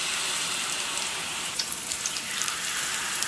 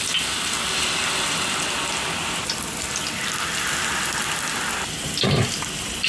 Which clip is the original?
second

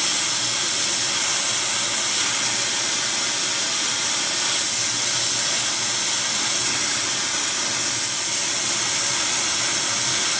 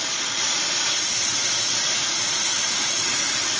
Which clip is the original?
first